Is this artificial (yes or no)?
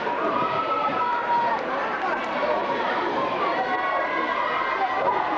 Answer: yes